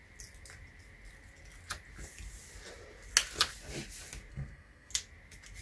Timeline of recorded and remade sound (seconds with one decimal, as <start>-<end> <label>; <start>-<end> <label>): 0.0-4.3 recorded; 4.3-4.9 remade; 4.9-5.6 recorded